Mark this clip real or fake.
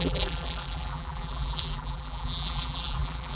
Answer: fake